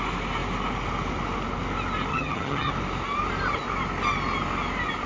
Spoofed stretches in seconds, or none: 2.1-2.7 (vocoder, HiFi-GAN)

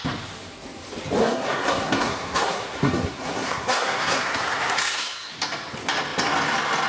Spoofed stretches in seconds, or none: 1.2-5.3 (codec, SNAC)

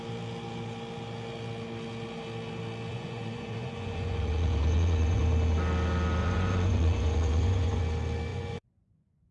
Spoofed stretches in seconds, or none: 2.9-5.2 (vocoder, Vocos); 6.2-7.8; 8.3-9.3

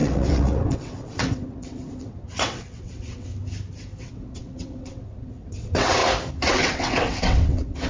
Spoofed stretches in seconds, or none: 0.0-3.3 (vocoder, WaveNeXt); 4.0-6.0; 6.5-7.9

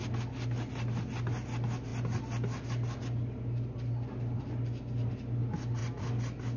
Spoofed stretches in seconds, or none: 1.9-4.4 (vocoder, BigVGAN v2)